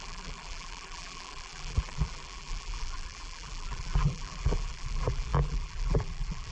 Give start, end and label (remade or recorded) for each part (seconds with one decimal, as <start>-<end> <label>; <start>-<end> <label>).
0.0-6.5 remade

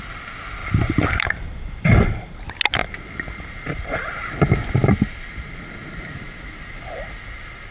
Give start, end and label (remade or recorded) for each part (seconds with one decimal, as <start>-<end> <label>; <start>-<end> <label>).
0.0-0.6 recorded; 0.6-2.4 remade; 2.4-2.8 recorded; 2.8-4.2 remade; 4.2-7.7 recorded